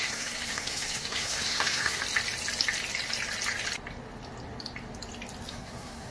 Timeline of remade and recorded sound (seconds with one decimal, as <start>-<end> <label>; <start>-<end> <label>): 0.0-2.0 remade; 2.0-5.5 recorded; 5.5-6.1 remade